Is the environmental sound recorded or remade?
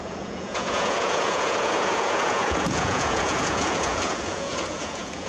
remade